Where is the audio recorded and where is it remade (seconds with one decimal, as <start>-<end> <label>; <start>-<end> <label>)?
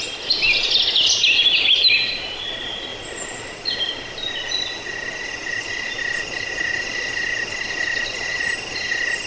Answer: 0.0-9.3 recorded